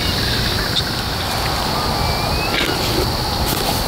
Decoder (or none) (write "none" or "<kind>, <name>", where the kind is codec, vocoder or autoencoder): none